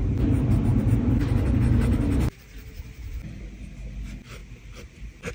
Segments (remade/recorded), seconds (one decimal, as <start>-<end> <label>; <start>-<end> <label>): 0.0-5.3 recorded

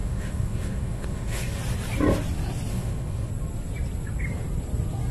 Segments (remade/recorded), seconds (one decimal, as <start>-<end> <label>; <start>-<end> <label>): 0.0-1.6 remade; 1.6-2.7 recorded; 2.7-3.3 remade; 3.3-5.1 recorded

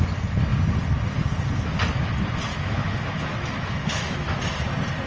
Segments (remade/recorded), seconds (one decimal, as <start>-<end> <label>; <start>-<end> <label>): 0.0-2.5 recorded; 2.5-4.4 remade; 4.4-5.1 recorded

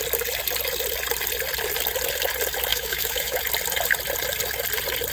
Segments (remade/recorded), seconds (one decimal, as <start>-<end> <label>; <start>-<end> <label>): 0.0-2.7 recorded; 2.7-3.4 remade; 3.4-5.1 recorded

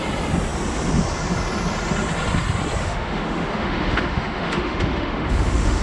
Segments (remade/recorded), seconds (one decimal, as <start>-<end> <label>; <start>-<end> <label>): 0.0-2.8 recorded; 2.8-5.8 remade